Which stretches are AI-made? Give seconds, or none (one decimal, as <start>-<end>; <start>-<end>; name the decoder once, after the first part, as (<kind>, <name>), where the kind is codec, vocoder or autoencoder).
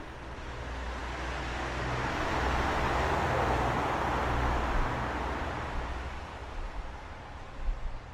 none